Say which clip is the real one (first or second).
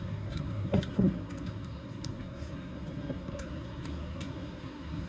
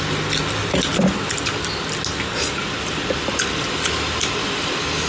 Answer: second